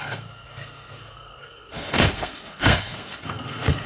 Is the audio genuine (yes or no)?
no